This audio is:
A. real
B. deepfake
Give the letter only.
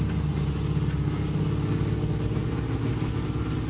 A